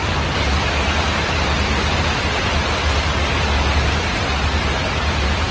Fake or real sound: real